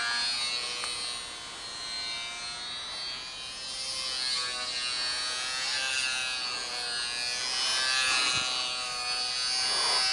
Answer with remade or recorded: recorded